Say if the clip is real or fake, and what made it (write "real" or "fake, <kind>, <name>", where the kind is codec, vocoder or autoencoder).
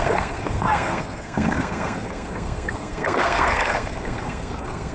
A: fake, codec, SNAC